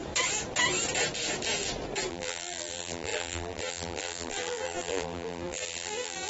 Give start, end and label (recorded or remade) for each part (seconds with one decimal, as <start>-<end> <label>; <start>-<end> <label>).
0.0-2.1 recorded; 2.1-6.3 remade